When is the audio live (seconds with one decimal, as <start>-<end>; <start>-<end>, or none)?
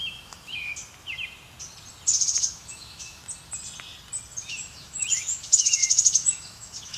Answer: 0.7-2.5; 3.2-4.4